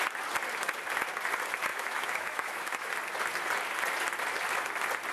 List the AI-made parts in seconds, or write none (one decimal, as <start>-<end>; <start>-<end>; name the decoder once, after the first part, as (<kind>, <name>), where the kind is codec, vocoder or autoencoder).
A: 1.7-2.9 (autoencoder, DAC-VAE)